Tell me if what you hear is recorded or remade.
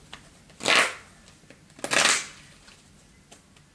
recorded